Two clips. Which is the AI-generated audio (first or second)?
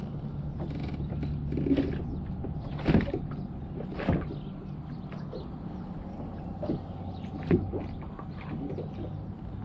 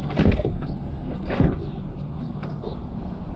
second